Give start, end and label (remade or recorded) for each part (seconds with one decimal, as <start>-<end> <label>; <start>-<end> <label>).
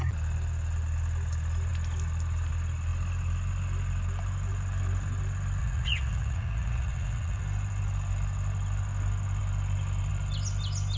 0.0-5.6 recorded; 5.6-7.4 remade; 7.4-11.0 recorded